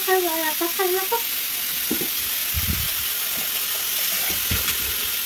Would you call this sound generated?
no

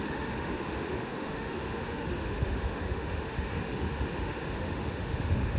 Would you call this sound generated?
yes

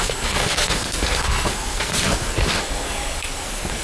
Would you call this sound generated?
yes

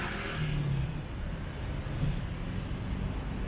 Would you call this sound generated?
no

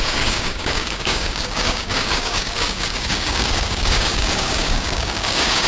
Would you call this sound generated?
yes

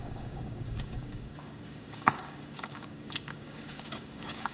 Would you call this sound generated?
yes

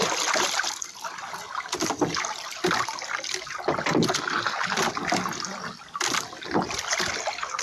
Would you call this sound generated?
no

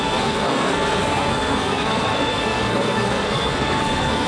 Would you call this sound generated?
yes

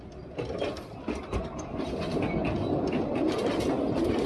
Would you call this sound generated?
no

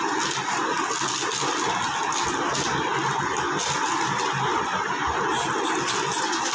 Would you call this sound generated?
no